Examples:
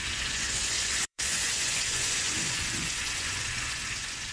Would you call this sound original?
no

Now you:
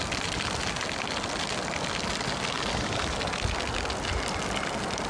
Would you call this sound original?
yes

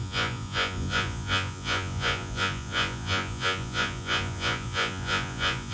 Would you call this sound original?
no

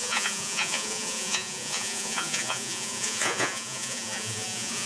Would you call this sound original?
no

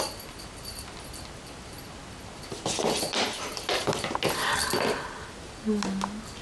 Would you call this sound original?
yes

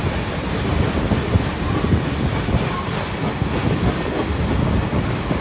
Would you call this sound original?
yes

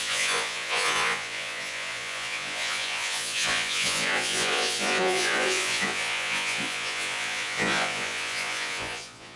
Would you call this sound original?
no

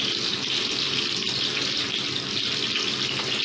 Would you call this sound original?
yes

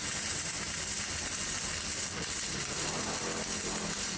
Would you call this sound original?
yes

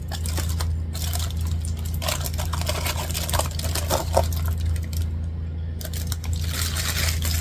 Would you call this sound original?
yes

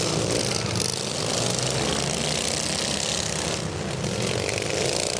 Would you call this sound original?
yes